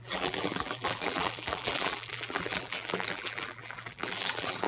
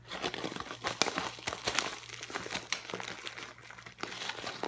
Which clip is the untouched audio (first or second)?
second